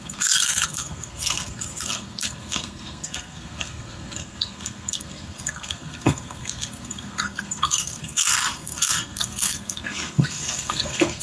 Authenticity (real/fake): fake